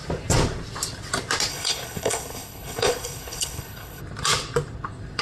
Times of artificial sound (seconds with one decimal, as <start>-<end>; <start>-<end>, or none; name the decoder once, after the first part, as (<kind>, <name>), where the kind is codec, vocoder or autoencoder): 1.5-4.0 (codec, HILCodec)